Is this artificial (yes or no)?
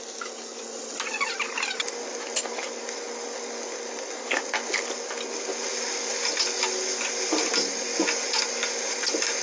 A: no